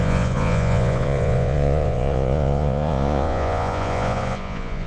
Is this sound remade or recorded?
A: remade